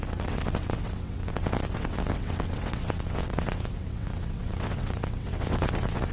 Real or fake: fake